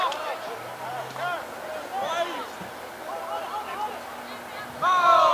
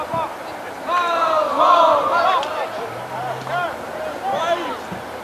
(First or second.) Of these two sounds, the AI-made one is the second